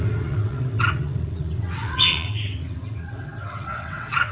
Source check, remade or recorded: remade